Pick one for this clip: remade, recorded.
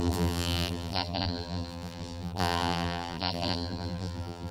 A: remade